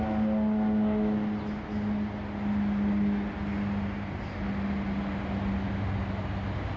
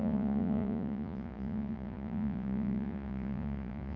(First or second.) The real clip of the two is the first